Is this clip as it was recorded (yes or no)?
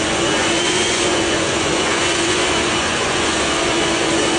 no